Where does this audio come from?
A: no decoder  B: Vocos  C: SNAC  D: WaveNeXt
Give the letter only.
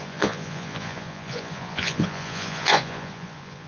B